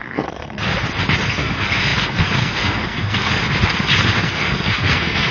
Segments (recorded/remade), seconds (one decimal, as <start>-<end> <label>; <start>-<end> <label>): 0.0-0.7 remade; 0.7-1.3 recorded; 1.3-3.4 remade; 3.4-4.2 recorded; 4.2-5.3 remade